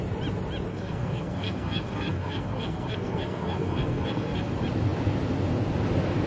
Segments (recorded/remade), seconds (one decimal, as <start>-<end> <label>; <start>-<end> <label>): 0.0-0.7 recorded; 0.7-4.5 remade; 4.5-6.3 recorded